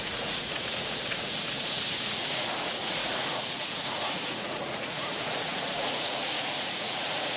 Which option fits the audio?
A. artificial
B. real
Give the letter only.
A